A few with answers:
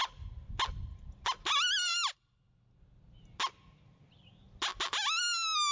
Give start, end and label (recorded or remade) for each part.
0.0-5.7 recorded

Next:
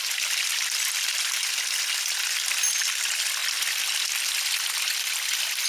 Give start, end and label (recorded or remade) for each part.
0.0-5.7 recorded

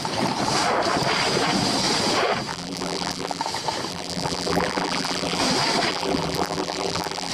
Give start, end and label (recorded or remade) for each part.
0.0-2.5 recorded; 2.5-3.4 remade; 3.4-3.9 recorded; 3.9-5.4 remade; 5.4-5.9 recorded; 5.9-7.3 remade

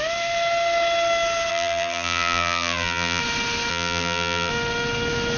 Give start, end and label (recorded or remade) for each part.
0.0-1.5 recorded; 1.5-3.2 remade; 3.2-3.7 recorded; 3.7-4.5 remade; 4.5-5.4 recorded

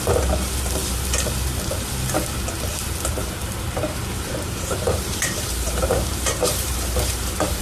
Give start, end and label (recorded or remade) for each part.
0.0-3.1 recorded; 3.1-7.6 remade

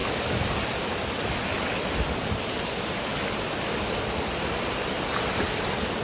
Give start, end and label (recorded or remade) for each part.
0.0-2.3 remade; 2.3-6.0 recorded

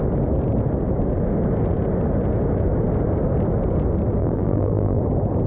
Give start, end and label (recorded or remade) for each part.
0.0-4.2 recorded; 4.2-5.0 remade; 5.0-5.5 recorded

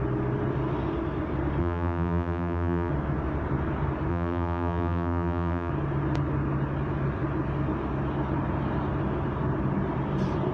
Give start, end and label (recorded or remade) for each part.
0.0-1.6 recorded; 1.6-2.9 remade; 2.9-4.1 recorded; 4.1-5.7 remade; 5.7-10.5 recorded